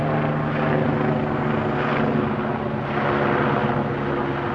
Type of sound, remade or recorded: recorded